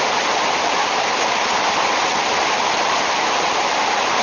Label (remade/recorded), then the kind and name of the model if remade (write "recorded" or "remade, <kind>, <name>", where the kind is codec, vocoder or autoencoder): recorded